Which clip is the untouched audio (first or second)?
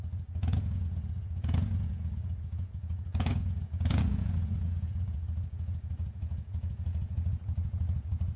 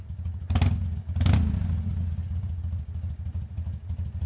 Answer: second